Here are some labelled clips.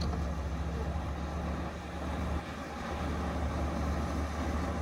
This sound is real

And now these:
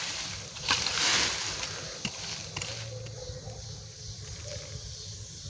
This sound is real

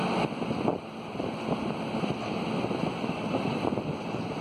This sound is fake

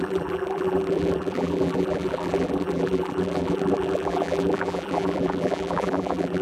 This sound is fake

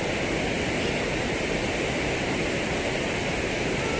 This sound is real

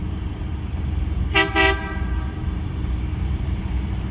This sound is fake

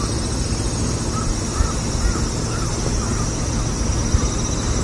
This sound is real